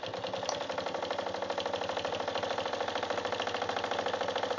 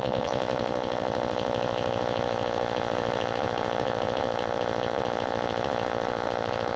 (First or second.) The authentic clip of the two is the first